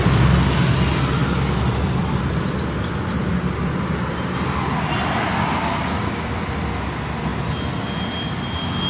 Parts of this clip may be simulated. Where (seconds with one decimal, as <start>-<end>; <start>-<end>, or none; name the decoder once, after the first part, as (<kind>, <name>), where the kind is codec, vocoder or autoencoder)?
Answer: none